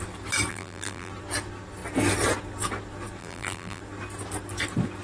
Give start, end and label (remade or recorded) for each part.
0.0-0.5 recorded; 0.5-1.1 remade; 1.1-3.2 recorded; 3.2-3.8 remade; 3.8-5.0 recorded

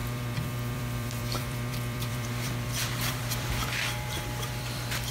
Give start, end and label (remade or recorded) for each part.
0.0-5.1 remade

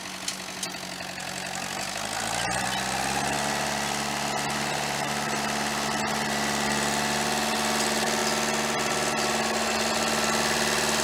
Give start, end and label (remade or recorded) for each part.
0.0-11.0 recorded

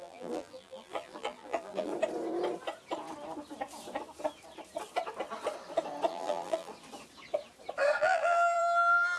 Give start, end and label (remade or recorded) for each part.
0.0-1.9 remade; 1.9-6.1 recorded; 6.1-6.7 remade; 6.7-8.0 recorded; 8.0-9.2 remade

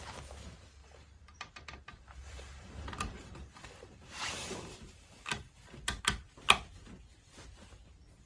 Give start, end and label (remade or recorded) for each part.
0.0-0.8 recorded; 0.8-5.8 remade; 5.8-8.3 recorded